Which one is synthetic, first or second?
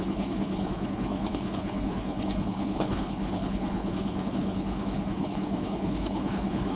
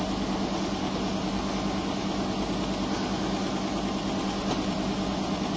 first